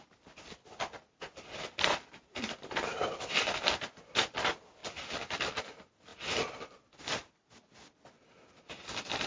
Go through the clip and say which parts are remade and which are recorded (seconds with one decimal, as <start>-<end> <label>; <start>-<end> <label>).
0.0-9.3 recorded